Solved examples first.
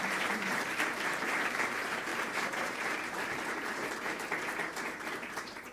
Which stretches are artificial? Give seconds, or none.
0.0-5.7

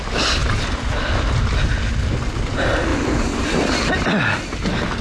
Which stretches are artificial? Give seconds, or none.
2.9-3.9

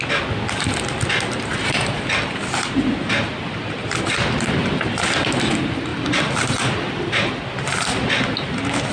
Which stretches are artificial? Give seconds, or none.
1.5-2.0; 5.9-7.4

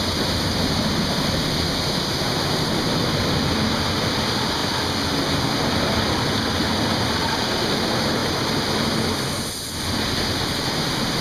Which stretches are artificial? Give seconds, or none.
none

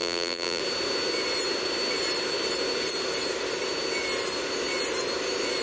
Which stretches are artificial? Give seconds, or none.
0.0-0.6

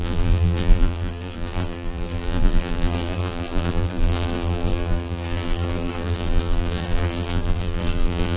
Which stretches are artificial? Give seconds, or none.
0.0-8.4

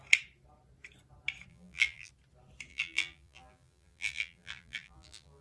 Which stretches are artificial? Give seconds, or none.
1.5-2.1; 2.7-5.4